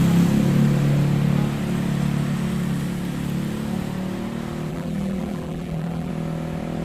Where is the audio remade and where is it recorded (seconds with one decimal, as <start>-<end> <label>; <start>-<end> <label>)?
0.0-4.7 recorded; 4.7-6.1 remade; 6.1-6.8 recorded